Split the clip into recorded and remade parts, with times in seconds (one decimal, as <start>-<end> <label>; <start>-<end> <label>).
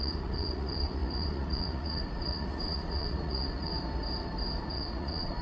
0.0-3.7 remade; 3.7-4.7 recorded; 4.7-5.4 remade